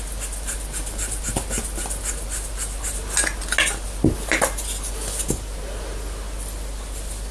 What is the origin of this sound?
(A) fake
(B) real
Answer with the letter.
B